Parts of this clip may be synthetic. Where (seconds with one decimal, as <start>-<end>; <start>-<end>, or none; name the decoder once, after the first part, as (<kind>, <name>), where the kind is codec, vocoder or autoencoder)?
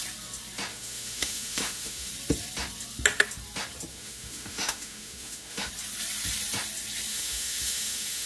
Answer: 0.7-2.1 (autoencoder, DAC-VAE); 3.9-5.7; 7.1-8.3